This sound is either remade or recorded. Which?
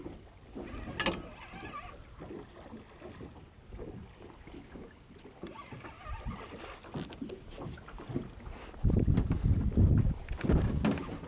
recorded